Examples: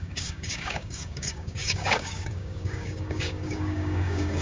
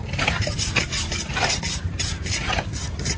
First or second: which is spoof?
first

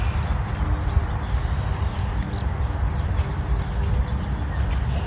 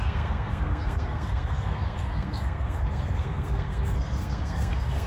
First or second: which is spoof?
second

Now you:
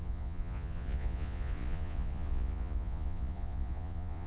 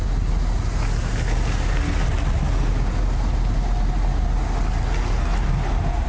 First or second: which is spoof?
first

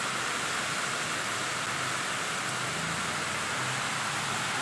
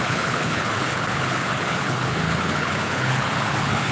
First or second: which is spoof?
second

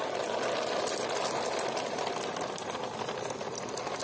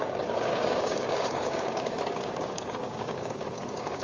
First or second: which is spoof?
second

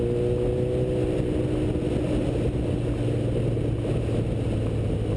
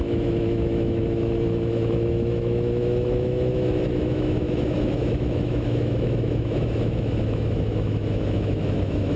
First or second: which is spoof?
second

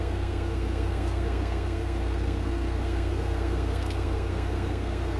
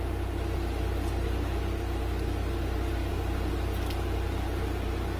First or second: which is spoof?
first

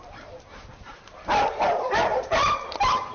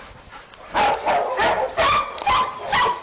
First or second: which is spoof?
first